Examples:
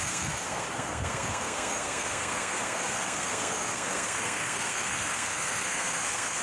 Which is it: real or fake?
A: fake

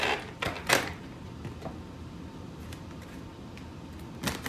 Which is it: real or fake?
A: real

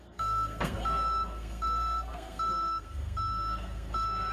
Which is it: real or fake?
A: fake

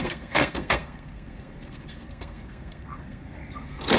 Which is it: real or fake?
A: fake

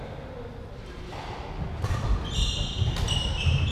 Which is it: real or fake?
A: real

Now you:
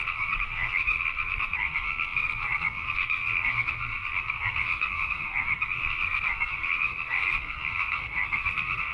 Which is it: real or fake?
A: fake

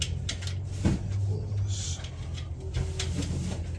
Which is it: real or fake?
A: real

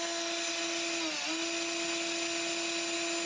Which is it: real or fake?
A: real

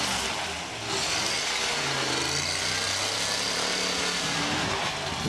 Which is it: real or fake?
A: real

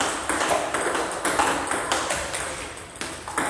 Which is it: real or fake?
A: real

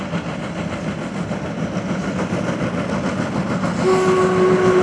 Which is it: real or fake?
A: real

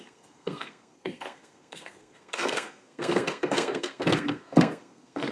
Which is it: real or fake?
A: fake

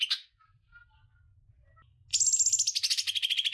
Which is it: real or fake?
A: real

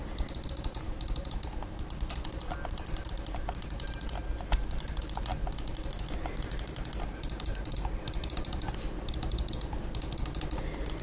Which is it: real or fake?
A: real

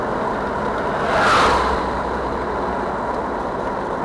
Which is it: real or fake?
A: real